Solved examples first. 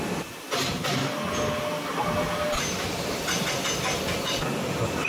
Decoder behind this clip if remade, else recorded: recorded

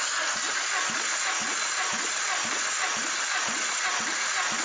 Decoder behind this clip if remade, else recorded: recorded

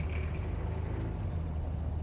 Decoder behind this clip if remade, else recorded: recorded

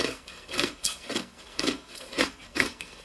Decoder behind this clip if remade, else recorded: remade, codec, SNAC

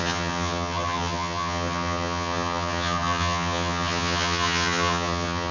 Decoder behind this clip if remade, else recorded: remade, vocoder, HiFi-GAN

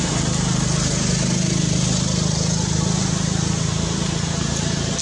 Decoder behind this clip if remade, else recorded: recorded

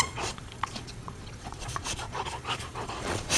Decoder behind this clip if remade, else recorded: remade, vocoder, Vocos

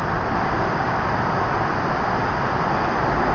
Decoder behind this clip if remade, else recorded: remade, vocoder, BigVGAN v2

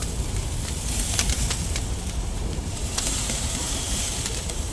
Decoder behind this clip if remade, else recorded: remade, vocoder, BigVGAN v2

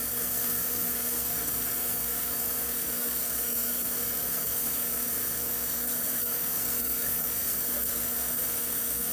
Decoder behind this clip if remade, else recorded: remade, codec, SNAC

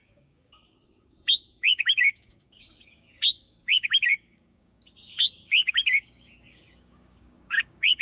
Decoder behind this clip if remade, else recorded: remade, codec, DAC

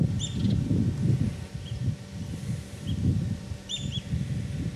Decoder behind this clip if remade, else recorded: recorded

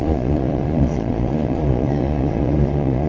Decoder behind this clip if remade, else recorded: remade, vocoder, Vocos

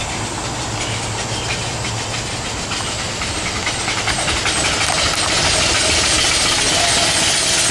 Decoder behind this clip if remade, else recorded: recorded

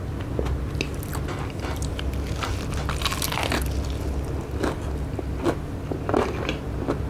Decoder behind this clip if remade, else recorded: recorded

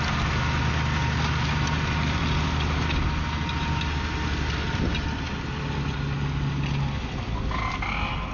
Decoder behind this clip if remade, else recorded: recorded